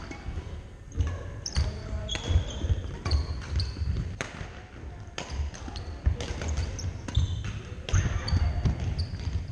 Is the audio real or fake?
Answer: real